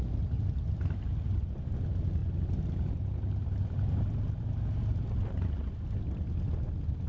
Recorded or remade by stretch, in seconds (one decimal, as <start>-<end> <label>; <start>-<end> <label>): 0.0-3.4 recorded; 3.4-4.5 remade; 4.5-7.1 recorded

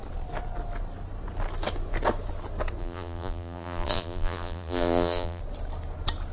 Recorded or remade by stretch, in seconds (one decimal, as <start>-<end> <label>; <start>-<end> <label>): 0.0-2.8 recorded; 2.8-5.4 remade; 5.4-6.3 recorded

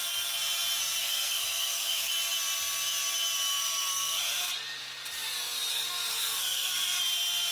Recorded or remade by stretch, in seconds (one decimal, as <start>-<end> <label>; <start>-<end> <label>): 0.0-1.0 recorded; 1.0-2.1 remade; 2.1-3.5 recorded; 3.5-4.5 remade; 4.5-5.7 recorded; 5.7-7.0 remade; 7.0-7.5 recorded

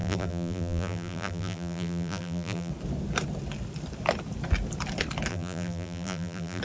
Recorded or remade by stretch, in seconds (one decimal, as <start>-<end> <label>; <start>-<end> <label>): 0.0-2.7 remade; 2.7-5.3 recorded; 5.3-6.6 remade